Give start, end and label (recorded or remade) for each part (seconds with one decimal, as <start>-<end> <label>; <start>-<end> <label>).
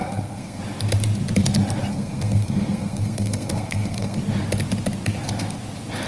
0.0-0.6 remade; 0.6-1.9 recorded; 1.9-4.2 remade; 4.2-6.1 recorded